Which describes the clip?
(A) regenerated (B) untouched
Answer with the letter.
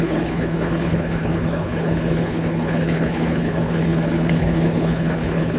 A